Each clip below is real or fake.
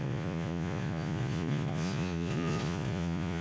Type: fake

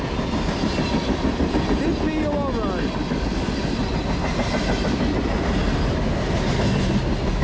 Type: real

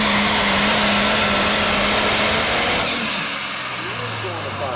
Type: real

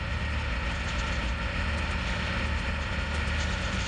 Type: real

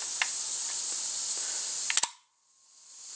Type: real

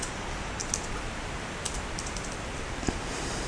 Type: real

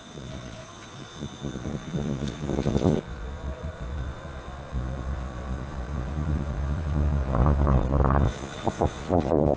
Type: fake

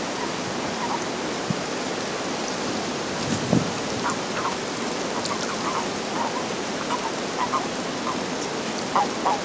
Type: real